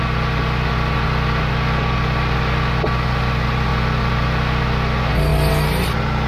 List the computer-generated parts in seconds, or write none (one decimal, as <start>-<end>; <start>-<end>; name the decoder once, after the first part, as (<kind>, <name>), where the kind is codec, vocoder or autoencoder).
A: none